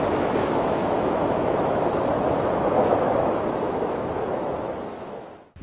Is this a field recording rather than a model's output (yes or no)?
no